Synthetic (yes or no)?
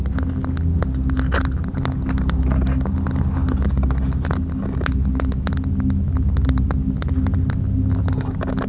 no